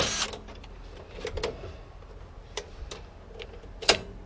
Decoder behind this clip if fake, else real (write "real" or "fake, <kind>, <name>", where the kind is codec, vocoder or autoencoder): real